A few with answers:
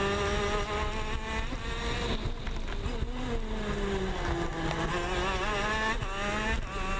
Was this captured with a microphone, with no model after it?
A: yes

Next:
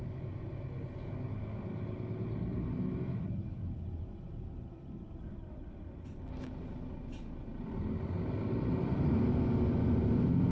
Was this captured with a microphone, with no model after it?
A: yes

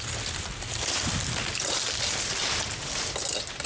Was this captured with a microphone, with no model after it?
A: yes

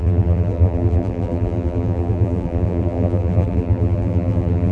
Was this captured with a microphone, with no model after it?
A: no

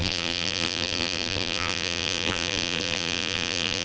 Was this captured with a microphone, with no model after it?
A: no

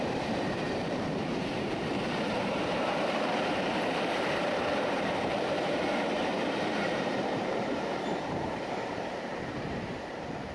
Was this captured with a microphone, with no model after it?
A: no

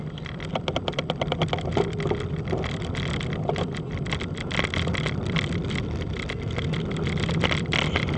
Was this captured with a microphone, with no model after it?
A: yes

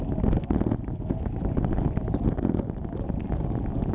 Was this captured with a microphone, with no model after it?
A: yes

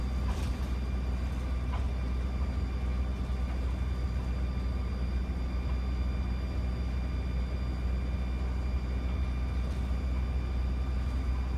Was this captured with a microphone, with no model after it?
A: yes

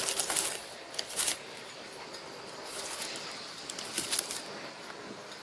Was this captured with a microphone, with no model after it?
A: yes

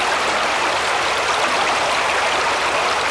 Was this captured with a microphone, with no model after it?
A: yes